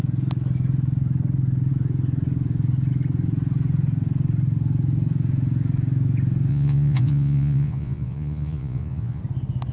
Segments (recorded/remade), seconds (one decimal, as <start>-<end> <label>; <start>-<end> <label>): 0.0-6.5 recorded; 6.5-9.2 remade; 9.2-9.7 recorded

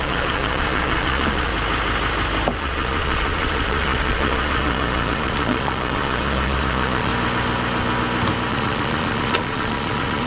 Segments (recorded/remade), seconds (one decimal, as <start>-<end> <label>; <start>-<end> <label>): 0.0-1.5 remade; 1.5-2.6 recorded; 2.6-7.1 remade; 7.1-8.5 recorded; 8.5-10.3 remade

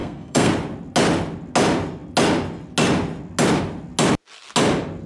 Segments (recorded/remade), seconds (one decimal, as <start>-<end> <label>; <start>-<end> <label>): 0.0-0.5 remade; 0.5-5.1 recorded

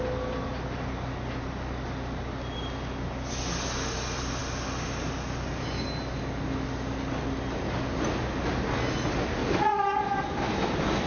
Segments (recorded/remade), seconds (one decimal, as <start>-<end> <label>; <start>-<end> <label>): 0.0-11.1 recorded

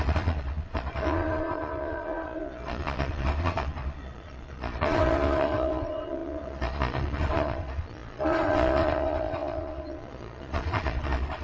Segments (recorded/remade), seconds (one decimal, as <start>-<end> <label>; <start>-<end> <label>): 0.0-11.4 remade

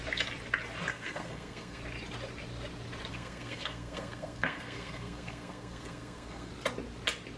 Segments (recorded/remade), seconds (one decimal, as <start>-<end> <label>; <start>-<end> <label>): 0.0-0.9 recorded; 0.9-1.8 remade; 1.8-3.1 recorded; 3.1-6.5 remade; 6.5-7.4 recorded

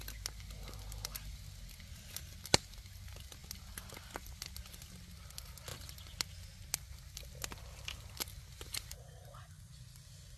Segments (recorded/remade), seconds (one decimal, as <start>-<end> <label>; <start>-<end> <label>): 0.0-10.4 recorded

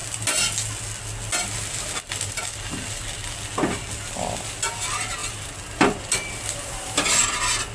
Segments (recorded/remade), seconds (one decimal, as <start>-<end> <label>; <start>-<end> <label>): 0.0-5.2 recorded; 5.2-7.3 remade; 7.3-7.7 recorded